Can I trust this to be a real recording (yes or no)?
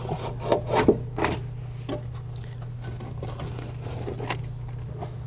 yes